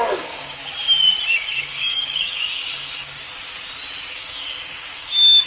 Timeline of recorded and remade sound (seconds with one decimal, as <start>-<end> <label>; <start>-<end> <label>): 0.0-0.6 remade; 0.6-1.3 recorded; 1.3-3.3 remade; 3.3-4.1 recorded; 4.1-5.5 remade